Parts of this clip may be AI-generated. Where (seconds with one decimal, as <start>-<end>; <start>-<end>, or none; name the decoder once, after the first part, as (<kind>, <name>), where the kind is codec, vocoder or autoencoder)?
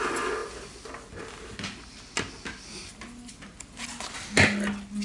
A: none